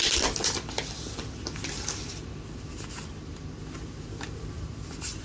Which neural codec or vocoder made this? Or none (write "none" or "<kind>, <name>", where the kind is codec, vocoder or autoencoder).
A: none